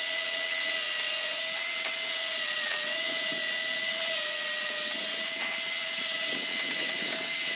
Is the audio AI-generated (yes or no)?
yes